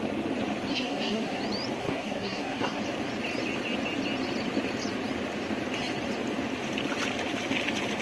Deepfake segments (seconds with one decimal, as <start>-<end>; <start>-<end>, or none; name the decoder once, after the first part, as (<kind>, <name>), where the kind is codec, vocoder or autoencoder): 0.7-1.4 (codec, SNAC); 1.8-2.8